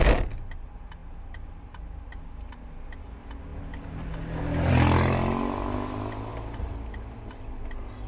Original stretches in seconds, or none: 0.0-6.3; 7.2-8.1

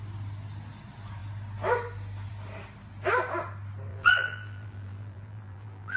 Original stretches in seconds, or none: 0.0-3.9

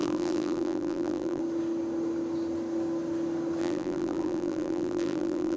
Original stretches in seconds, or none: 1.4-3.6